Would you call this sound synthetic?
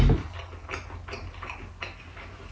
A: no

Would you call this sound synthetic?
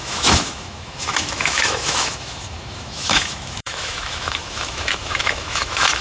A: yes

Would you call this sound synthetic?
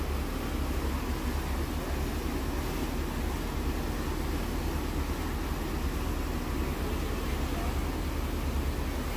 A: no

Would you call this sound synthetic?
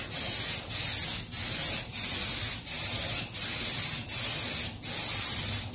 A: no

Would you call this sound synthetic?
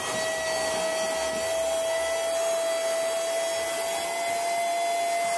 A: no